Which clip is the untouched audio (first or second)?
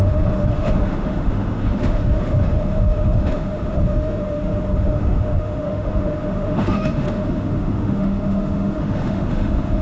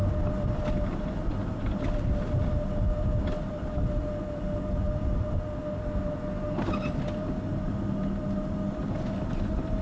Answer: second